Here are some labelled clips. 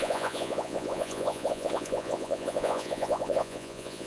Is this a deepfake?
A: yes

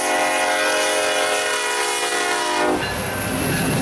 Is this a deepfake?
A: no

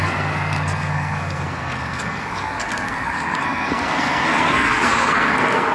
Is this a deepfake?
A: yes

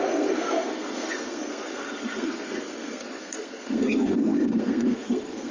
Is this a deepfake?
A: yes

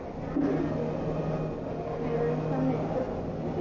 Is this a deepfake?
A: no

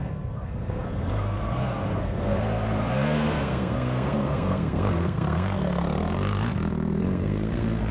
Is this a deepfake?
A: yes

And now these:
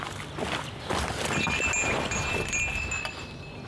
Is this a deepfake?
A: no